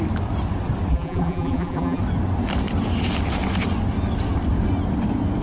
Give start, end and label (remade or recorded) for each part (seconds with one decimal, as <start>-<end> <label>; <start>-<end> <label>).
0.0-0.9 recorded; 0.9-2.0 remade; 2.0-5.4 recorded